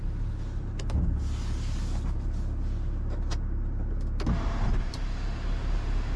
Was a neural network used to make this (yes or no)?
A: no